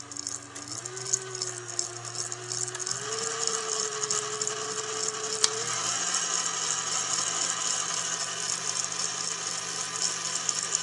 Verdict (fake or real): real